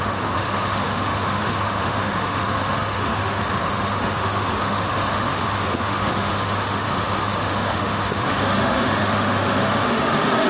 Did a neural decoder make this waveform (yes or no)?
yes